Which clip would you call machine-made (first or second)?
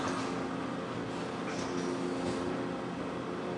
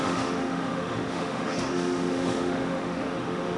second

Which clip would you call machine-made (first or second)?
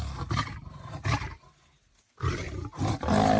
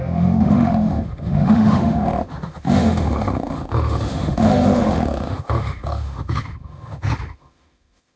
second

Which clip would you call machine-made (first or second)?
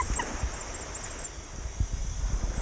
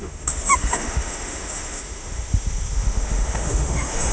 second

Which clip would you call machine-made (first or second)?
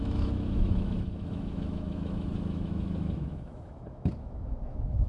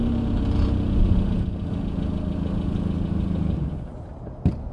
first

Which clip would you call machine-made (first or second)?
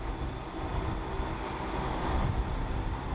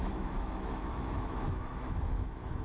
second